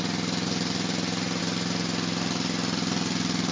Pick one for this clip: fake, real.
real